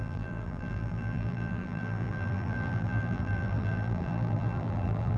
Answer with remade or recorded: remade